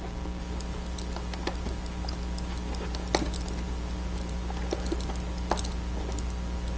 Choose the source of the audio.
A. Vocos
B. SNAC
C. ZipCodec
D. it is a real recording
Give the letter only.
D